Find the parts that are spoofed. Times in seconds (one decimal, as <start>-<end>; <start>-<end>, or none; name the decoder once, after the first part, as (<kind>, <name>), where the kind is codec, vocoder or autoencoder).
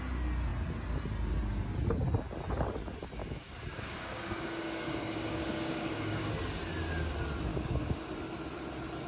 3.2-6.3 (codec, DAC); 7.5-8.0